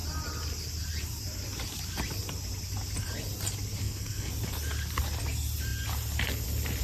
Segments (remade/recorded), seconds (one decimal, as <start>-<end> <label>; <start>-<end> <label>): 0.0-3.8 recorded; 3.8-4.3 remade; 4.3-6.8 recorded